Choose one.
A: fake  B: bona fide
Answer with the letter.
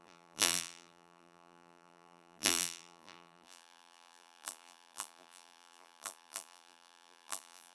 A